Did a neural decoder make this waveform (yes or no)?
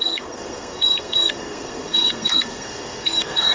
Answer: yes